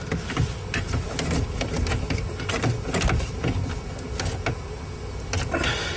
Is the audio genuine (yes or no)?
yes